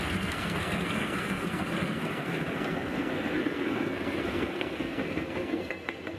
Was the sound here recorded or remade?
remade